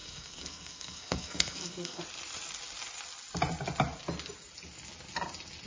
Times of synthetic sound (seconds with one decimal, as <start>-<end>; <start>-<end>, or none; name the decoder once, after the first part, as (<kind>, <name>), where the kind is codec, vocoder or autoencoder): 0.0-2.0 (codec, SNAC)